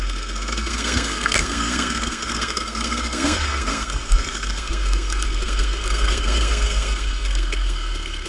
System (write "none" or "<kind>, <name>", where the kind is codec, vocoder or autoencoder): codec, SNAC